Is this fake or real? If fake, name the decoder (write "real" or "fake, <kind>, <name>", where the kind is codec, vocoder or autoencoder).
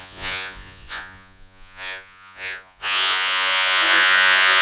fake, vocoder, Vocos